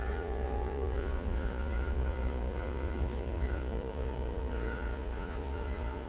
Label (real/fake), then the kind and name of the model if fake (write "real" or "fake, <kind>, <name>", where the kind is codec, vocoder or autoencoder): fake, vocoder, Vocos